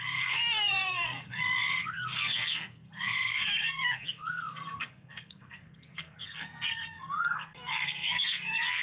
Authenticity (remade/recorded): remade